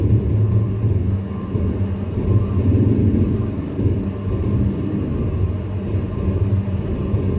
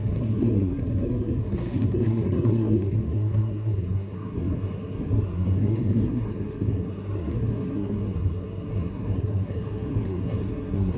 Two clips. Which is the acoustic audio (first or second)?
first